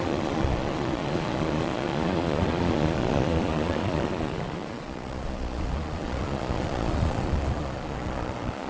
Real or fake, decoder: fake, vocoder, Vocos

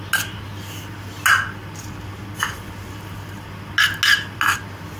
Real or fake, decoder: real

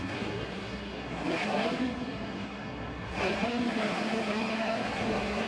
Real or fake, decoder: fake, codec, SNAC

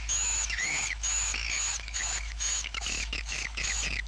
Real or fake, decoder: fake, autoencoder, DAC-VAE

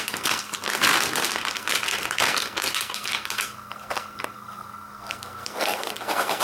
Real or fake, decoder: fake, codec, SNAC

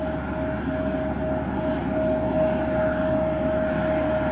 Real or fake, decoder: real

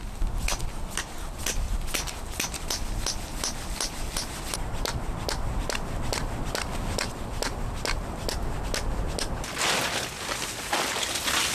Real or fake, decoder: real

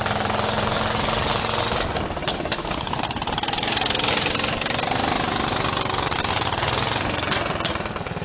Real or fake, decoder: real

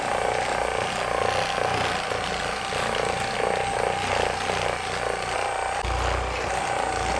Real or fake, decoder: real